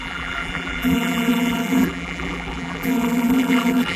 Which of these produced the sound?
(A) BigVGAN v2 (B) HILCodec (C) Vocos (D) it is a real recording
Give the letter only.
A